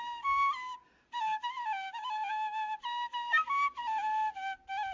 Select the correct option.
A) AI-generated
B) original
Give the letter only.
B